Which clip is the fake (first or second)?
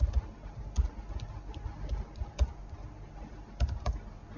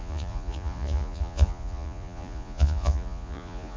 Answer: second